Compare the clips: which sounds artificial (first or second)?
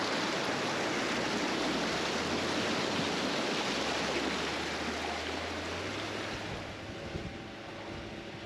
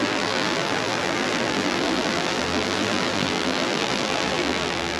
second